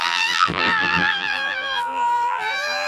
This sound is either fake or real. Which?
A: fake